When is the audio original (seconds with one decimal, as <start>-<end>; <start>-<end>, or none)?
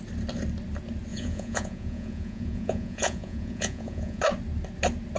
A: 0.0-1.1; 4.2-5.2